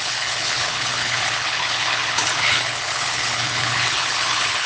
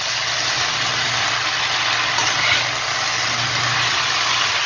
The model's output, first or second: first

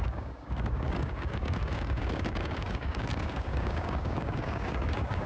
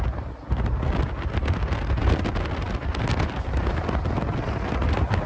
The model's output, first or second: first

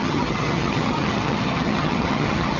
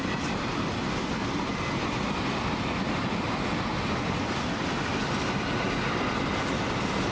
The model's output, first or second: first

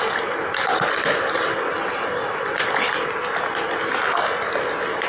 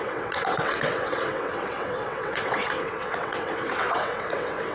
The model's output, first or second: second